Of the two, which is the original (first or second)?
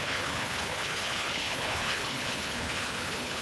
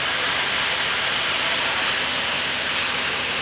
second